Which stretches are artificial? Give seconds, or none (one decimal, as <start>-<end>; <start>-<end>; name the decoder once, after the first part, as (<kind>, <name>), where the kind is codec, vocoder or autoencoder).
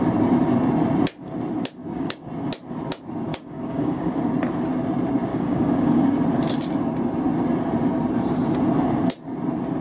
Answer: 1.8-2.3 (codec, DAC); 3.3-4.1; 5.3-6.2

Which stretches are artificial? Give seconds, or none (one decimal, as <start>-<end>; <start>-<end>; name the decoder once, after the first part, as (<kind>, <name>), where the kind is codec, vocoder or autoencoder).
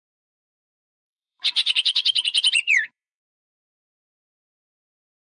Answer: 0.0-3.2 (vocoder, Vocos)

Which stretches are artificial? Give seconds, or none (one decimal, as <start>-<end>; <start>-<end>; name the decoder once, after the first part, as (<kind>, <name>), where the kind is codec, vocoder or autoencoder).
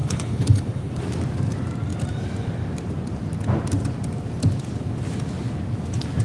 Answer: 0.0-1.0 (codec, HILCodec)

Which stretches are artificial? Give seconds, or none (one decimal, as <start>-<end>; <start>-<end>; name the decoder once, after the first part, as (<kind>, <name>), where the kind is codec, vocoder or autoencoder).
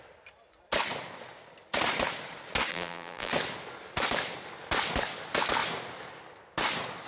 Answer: 2.7-3.3 (vocoder, BigVGAN v2)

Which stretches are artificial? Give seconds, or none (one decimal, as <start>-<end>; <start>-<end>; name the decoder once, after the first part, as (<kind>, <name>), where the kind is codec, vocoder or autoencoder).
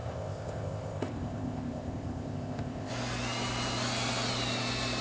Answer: 0.0-2.9 (codec, ZipCodec)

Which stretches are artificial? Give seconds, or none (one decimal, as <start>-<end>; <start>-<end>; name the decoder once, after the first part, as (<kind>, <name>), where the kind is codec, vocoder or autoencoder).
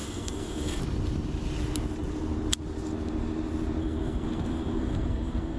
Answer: 0.0-0.8 (codec, SNAC); 3.8-5.6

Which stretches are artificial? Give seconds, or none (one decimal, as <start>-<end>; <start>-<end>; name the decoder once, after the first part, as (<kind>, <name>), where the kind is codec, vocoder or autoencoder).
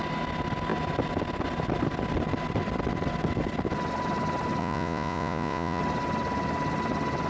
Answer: 4.6-5.8 (vocoder, Vocos)